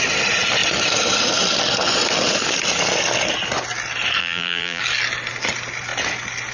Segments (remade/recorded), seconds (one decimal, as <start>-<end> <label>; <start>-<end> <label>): 0.0-4.2 recorded; 4.2-4.8 remade; 4.8-6.5 recorded